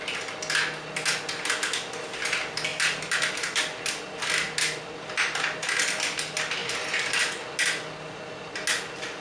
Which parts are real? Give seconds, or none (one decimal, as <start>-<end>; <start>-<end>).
0.0-9.2